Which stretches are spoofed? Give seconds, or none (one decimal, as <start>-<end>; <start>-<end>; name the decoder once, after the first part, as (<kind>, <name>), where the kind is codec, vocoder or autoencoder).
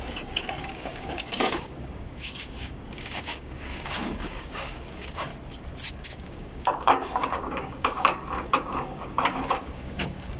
0.0-5.3 (codec, DAC); 5.9-10.4